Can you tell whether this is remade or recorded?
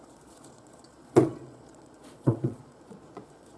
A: remade